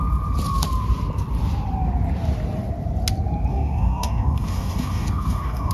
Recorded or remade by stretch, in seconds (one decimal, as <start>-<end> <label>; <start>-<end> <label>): 0.0-3.5 recorded; 3.5-5.7 remade